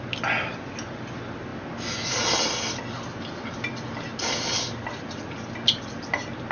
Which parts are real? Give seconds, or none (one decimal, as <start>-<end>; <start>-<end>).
0.0-6.5

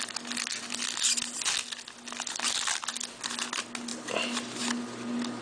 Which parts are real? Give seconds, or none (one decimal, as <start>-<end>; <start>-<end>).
0.0-5.4

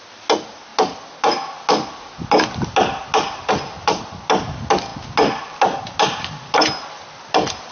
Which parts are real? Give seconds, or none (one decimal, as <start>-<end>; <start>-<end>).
0.0-7.7

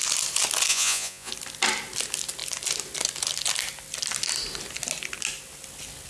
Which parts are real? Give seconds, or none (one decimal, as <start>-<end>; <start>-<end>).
0.0-0.7; 1.3-6.1

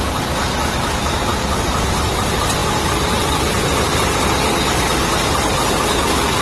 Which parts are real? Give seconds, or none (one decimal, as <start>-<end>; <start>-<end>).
0.0-6.4

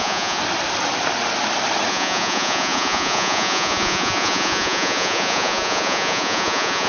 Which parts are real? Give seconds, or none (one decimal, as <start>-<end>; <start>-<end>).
0.4-1.9

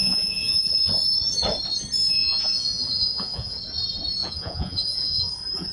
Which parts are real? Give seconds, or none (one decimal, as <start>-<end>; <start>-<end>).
0.6-2.2; 3.6-4.2; 5.3-5.7